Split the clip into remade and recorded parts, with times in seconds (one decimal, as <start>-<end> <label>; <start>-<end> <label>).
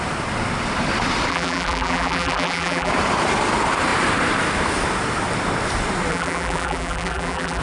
0.0-1.3 recorded; 1.3-2.9 remade; 2.9-6.1 recorded; 6.1-7.6 remade